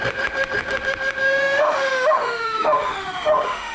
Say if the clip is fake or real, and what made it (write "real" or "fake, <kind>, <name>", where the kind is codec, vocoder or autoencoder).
fake, autoencoder, DAC-VAE